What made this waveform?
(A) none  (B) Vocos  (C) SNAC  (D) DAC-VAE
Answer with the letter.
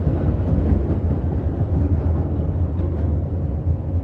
C